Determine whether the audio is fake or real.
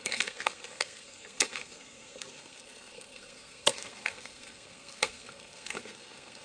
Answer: fake